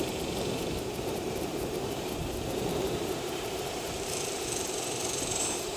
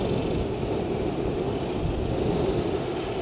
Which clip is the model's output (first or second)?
first